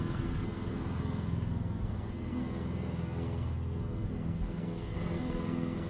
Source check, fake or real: fake